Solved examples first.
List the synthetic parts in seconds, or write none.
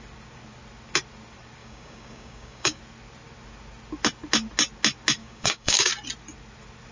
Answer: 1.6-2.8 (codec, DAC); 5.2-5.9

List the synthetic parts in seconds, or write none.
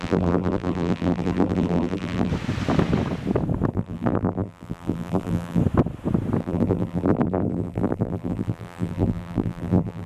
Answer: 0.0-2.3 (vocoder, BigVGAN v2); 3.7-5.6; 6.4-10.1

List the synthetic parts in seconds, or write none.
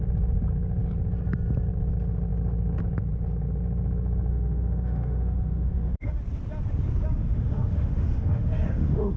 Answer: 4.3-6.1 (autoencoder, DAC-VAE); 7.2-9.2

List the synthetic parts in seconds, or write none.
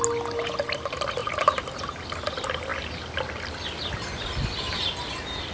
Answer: none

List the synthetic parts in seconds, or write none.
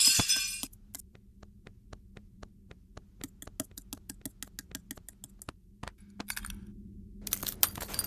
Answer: none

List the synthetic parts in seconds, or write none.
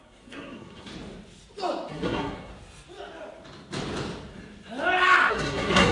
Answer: 0.0-0.9 (codec, SNAC); 1.9-2.5; 5.3-5.9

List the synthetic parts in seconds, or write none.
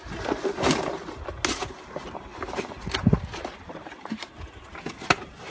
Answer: 2.3-4.4 (vocoder, BigVGAN v2)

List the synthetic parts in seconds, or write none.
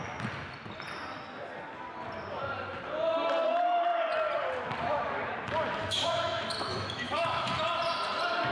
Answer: 5.8-7.5 (autoencoder, DAC-VAE)